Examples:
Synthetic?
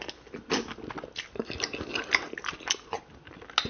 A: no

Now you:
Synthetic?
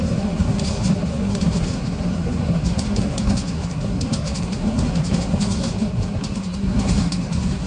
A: yes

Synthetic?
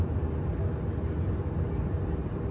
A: no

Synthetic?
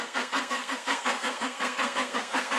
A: yes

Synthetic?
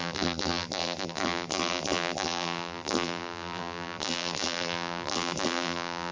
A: yes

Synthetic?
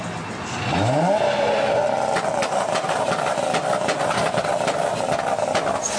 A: no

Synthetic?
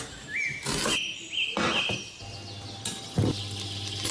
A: no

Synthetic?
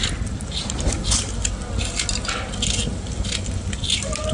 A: no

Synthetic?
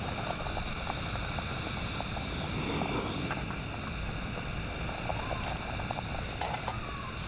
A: no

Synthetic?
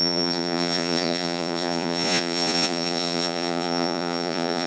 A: yes